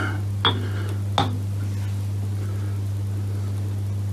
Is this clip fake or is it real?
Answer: real